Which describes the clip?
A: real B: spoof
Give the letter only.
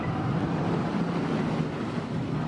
A